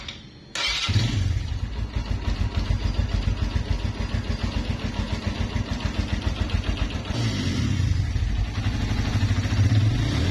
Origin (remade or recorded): recorded